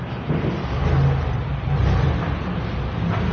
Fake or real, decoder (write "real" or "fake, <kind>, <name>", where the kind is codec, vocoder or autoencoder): real